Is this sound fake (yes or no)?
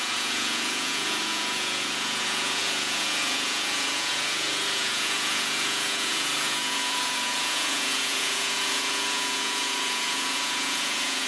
yes